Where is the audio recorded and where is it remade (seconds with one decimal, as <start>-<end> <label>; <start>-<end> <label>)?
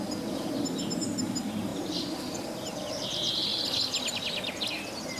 0.0-5.2 recorded